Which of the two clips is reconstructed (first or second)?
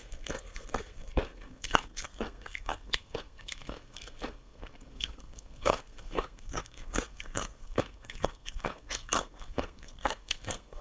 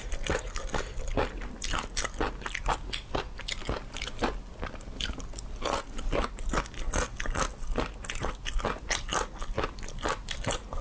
first